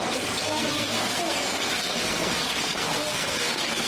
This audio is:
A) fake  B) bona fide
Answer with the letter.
A